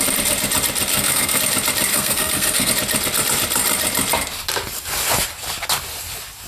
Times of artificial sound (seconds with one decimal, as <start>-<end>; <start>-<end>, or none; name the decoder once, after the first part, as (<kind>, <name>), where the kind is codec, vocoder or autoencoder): 0.9-1.4 (codec, SNAC); 1.9-2.7